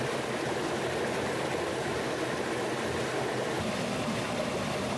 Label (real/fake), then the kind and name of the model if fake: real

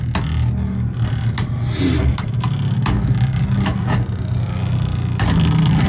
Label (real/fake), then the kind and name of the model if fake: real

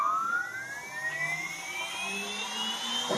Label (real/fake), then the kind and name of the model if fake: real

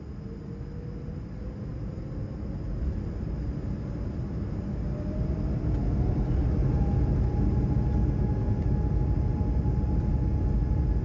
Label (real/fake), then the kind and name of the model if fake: real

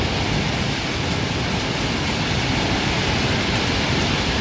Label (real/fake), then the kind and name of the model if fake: real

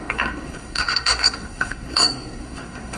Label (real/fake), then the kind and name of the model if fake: fake, codec, SNAC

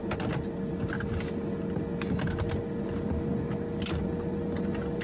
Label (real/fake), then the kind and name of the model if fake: real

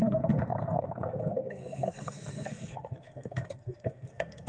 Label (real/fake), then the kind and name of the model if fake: fake, codec, SNAC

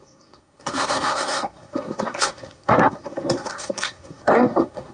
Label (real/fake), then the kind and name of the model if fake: fake, codec, SNAC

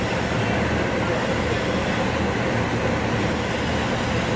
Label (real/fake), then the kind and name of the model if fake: real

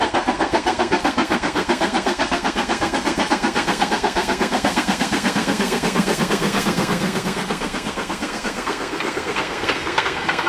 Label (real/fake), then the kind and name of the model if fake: fake, codec, SNAC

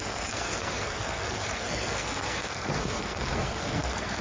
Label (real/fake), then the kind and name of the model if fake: fake, codec, SNAC